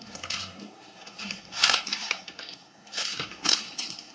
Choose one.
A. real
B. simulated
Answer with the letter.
B